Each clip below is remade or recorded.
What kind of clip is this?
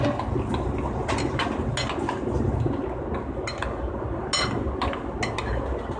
recorded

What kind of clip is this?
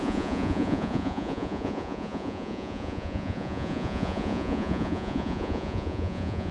remade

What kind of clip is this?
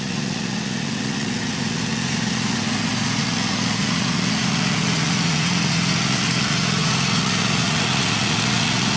remade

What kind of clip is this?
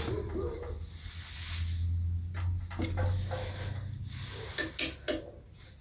recorded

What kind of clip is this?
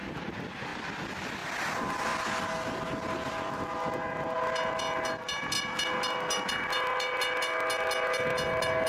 recorded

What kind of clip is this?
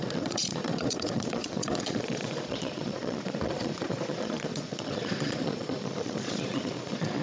remade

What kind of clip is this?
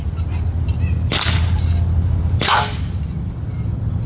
recorded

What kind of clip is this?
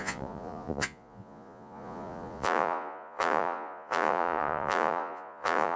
remade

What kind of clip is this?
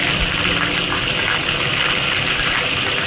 recorded